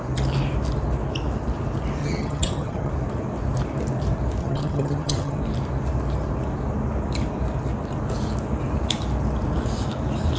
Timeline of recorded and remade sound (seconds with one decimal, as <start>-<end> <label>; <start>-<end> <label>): 0.0-2.0 recorded; 2.0-2.9 remade; 2.9-4.4 recorded; 4.4-5.4 remade; 5.4-10.4 recorded